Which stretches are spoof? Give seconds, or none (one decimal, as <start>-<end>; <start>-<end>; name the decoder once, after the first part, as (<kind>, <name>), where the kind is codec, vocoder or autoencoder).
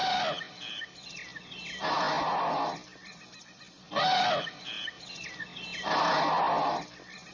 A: none